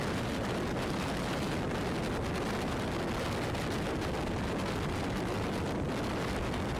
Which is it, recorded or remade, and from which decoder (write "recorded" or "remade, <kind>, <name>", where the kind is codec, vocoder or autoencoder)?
recorded